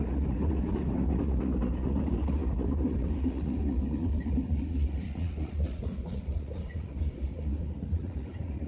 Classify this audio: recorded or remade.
remade